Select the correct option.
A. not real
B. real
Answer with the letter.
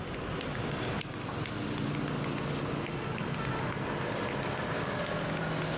B